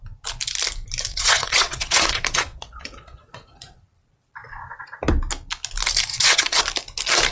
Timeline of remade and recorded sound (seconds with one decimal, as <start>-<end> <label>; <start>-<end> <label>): 0.0-1.1 recorded; 1.1-3.8 remade; 3.8-6.1 recorded; 6.1-6.6 remade; 6.6-7.3 recorded

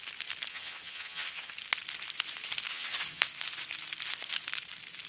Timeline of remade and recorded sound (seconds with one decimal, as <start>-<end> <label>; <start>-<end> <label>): 0.0-0.5 recorded; 0.5-1.5 remade; 1.5-2.7 recorded; 2.7-3.2 remade; 3.2-5.1 recorded

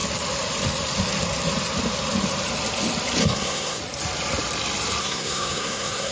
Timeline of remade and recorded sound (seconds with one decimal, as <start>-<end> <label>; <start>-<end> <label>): 0.0-3.2 recorded; 3.2-3.8 remade; 3.8-5.0 recorded; 5.0-6.1 remade